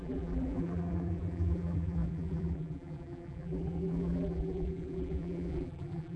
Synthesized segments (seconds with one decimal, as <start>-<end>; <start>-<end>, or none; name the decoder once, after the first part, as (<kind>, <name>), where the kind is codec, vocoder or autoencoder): 0.0-6.2 (vocoder, BigVGAN v2)